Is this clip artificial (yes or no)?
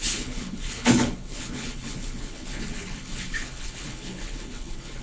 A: yes